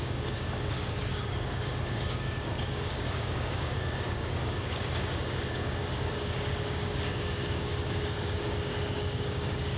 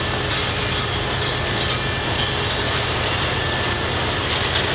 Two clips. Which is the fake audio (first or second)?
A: first